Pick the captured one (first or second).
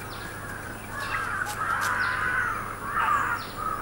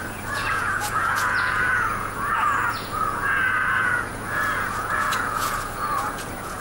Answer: first